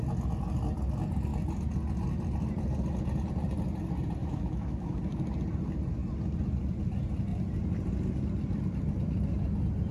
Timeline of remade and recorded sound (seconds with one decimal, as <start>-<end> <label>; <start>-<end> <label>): 0.0-4.2 recorded; 4.2-5.0 remade; 5.0-9.9 recorded